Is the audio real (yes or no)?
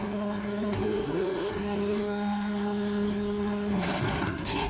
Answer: no